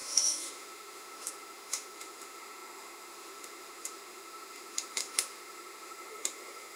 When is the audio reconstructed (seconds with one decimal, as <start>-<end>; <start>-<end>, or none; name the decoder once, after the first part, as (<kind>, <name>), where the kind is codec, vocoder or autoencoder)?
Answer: 0.0-6.8 (autoencoder, DAC-VAE)